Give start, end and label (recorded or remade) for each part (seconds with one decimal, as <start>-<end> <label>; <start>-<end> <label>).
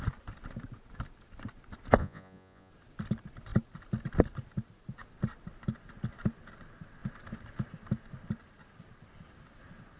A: 0.0-2.0 recorded; 2.0-2.7 remade; 2.7-10.0 recorded